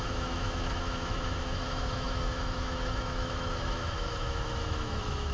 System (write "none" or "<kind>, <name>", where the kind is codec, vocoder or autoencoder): autoencoder, DAC-VAE